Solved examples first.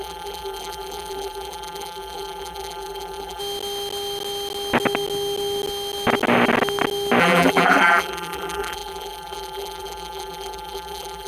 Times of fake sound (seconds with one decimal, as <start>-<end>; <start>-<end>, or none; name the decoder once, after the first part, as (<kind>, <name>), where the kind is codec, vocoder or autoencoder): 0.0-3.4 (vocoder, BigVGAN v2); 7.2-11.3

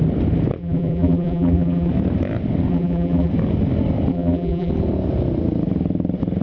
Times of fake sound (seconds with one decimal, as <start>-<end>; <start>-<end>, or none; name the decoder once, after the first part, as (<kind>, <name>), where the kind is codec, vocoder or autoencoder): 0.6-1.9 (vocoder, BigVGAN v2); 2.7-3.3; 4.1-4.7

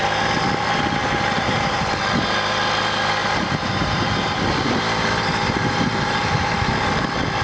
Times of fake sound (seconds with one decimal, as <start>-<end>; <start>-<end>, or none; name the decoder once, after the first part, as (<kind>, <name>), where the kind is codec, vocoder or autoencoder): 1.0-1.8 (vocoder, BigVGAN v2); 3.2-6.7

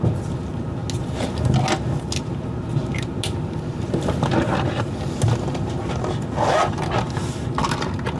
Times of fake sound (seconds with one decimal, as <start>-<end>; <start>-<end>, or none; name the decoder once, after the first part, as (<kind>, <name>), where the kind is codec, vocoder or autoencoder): none

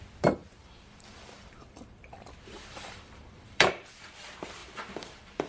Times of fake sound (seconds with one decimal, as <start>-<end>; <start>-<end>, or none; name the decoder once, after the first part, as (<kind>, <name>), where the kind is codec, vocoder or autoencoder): 0.4-3.7 (vocoder, BigVGAN v2); 4.6-5.5